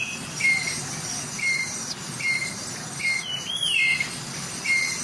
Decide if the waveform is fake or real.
real